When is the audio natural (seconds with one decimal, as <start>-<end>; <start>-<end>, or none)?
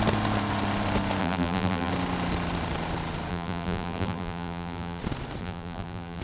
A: 0.0-1.2; 1.9-3.3; 5.0-5.4